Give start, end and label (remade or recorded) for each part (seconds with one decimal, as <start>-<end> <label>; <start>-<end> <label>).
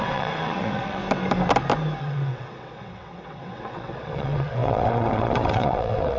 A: 0.0-1.0 remade; 1.0-2.0 recorded; 2.0-6.2 remade